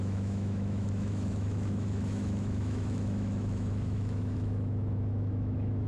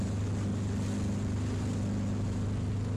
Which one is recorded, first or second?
second